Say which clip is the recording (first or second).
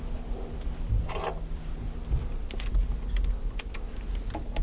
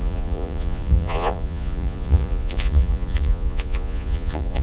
first